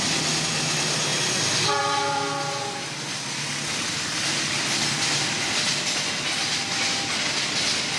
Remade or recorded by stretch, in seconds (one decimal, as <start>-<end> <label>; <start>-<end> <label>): 0.0-8.0 recorded